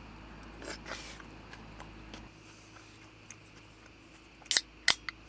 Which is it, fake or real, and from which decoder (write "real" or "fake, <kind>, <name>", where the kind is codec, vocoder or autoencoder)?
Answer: real